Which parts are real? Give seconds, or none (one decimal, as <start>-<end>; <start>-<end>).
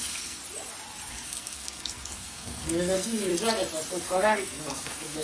0.4-1.1; 3.3-3.9